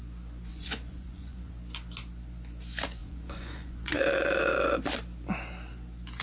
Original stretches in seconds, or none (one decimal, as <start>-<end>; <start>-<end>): 0.0-0.5; 1.5-3.0; 4.0-6.2